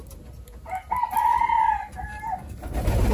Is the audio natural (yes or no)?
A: yes